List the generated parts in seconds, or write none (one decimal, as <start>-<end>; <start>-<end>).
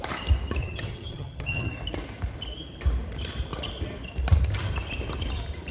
0.6-1.7